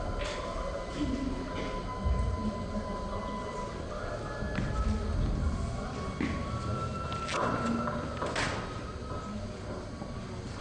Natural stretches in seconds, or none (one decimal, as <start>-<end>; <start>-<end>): 0.0-10.6